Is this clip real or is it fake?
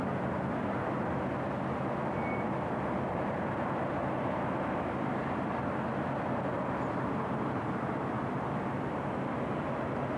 real